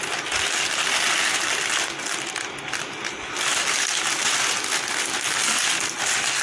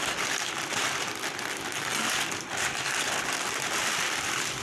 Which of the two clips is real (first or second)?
first